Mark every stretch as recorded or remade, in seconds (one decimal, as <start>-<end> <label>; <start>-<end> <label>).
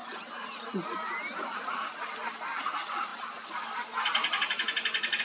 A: 0.0-0.6 remade; 0.6-5.2 recorded